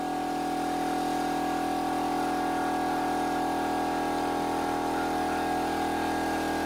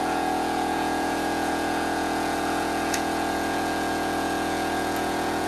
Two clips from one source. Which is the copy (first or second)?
second